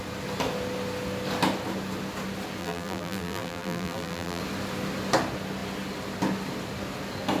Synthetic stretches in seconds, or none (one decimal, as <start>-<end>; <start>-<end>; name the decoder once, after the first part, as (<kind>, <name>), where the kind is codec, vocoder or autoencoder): 2.6-4.4 (vocoder, BigVGAN v2)